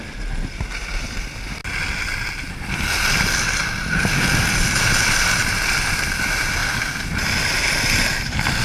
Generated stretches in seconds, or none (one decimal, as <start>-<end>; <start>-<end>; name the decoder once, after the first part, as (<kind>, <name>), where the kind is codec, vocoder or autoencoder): none